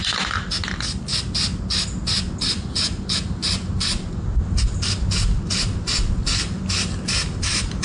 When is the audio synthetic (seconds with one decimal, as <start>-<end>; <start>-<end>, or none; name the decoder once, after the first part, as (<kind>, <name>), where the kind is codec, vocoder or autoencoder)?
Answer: none

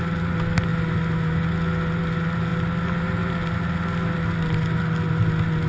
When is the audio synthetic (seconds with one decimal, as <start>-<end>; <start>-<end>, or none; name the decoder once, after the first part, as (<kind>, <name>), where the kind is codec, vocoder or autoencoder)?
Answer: none

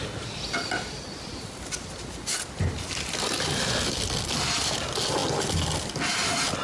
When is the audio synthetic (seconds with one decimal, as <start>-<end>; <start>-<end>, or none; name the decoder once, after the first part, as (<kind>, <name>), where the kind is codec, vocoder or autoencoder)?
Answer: none

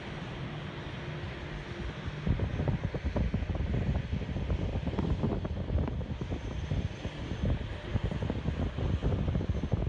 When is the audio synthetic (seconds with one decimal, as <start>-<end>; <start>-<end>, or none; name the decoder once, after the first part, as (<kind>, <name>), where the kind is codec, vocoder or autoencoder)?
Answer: none

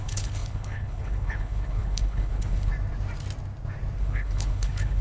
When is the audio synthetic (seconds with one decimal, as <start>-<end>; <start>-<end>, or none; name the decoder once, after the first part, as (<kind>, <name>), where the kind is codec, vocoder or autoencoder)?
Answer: 0.0-2.7 (codec, HILCodec); 4.0-5.0

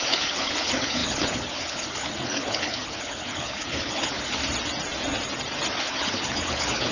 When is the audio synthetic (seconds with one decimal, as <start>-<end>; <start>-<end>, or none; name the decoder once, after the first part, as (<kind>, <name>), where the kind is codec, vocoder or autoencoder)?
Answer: 0.0-4.4 (codec, HILCodec); 5.8-6.9